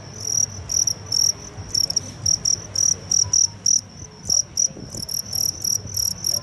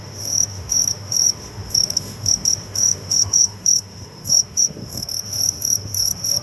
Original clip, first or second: first